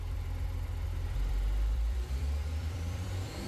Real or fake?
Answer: fake